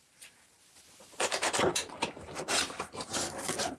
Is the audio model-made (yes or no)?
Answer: yes